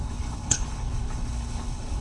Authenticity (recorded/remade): remade